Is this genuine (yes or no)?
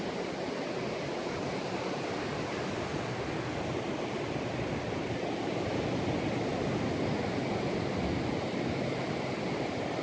yes